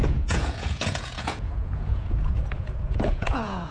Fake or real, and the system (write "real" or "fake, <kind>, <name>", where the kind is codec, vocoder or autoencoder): fake, vocoder, Vocos